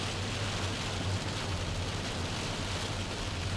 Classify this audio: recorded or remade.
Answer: recorded